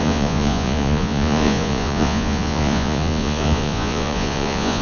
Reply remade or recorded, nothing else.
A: remade